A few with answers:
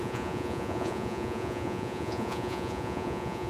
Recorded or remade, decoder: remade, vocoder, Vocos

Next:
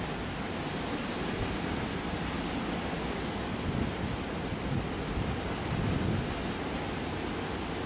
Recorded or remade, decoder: recorded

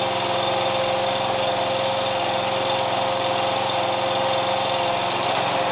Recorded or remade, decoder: recorded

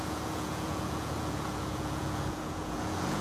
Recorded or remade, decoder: remade, vocoder, Vocos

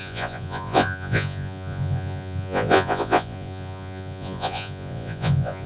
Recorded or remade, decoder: remade, vocoder, Vocos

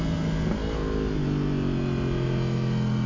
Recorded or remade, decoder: recorded